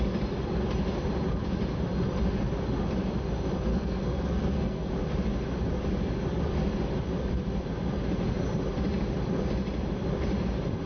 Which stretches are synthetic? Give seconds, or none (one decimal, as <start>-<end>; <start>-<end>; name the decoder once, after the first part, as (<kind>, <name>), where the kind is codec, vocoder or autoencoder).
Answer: 3.7-4.9 (codec, SNAC)